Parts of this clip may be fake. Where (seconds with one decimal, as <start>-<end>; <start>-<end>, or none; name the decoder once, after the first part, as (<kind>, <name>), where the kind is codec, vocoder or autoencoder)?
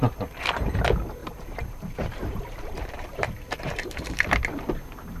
1.2-4.3 (vocoder, BigVGAN v2)